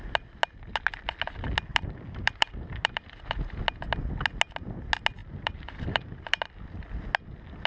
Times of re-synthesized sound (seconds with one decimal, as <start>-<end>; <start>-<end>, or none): 1.7-3.6; 5.2-6.4